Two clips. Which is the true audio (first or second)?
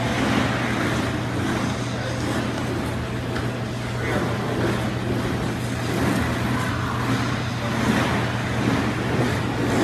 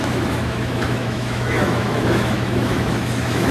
first